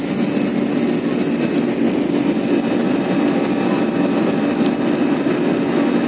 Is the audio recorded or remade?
recorded